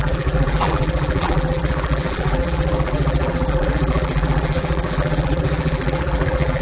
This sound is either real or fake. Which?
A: fake